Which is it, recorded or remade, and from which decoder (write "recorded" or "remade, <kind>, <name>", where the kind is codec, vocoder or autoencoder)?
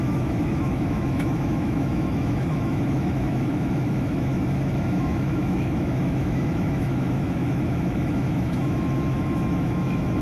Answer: remade, autoencoder, DAC-VAE